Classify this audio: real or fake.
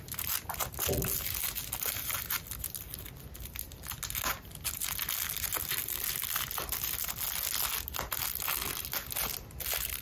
real